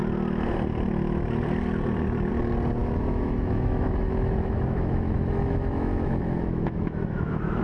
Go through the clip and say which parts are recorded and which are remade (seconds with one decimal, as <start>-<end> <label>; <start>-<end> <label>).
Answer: 0.0-2.8 recorded; 2.8-7.6 remade